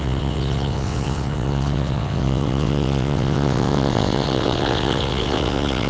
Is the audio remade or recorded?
remade